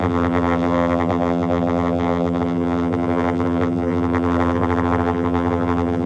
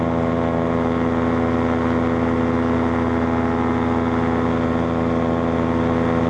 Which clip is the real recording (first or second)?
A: second